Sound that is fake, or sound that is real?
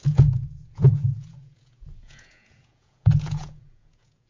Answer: fake